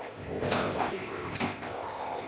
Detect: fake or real fake